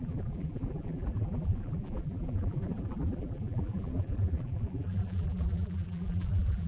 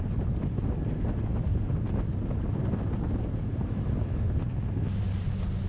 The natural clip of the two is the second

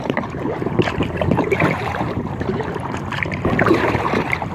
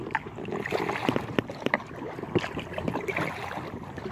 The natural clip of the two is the second